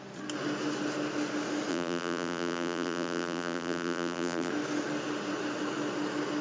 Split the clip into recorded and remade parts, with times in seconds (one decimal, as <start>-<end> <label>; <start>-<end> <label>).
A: 0.0-1.7 recorded; 1.7-4.5 remade; 4.5-6.4 recorded